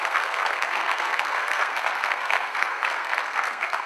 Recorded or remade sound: remade